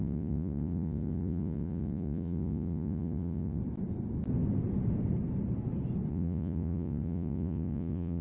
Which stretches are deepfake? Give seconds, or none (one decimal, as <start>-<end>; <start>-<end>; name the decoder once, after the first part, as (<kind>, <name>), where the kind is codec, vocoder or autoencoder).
0.0-3.6 (vocoder, Vocos); 6.1-8.2